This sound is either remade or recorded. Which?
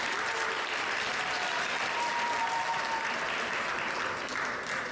recorded